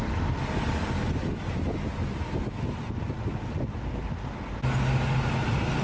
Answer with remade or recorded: recorded